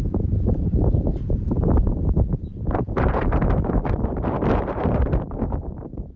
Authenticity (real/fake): fake